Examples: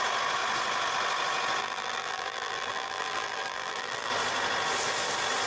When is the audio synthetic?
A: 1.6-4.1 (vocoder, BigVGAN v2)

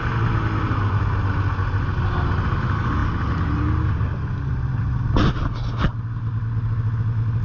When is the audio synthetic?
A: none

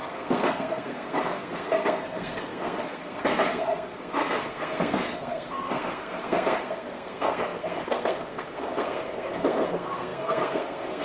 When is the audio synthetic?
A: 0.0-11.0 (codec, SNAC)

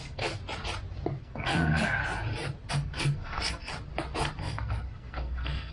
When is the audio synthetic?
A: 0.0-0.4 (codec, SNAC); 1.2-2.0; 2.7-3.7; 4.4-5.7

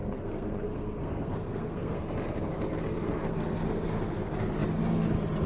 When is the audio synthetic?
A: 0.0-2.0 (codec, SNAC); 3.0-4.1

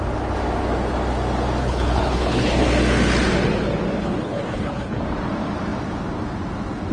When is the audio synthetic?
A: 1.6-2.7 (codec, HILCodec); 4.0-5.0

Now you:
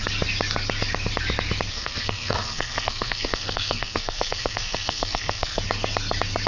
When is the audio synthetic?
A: 1.7-5.6 (codec, SNAC)

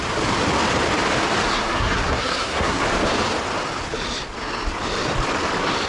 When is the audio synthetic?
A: 1.5-2.8 (codec, SNAC)